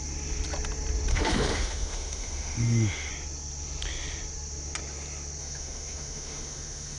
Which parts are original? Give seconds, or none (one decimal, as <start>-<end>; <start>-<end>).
0.0-1.1; 3.1-5.4